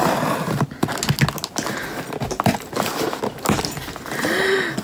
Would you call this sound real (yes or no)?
yes